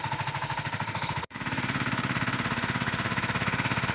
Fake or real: fake